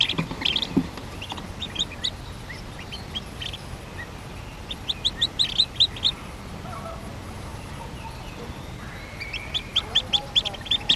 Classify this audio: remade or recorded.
recorded